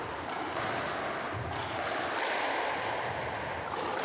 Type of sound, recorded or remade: recorded